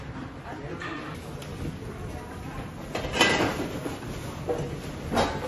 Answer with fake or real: real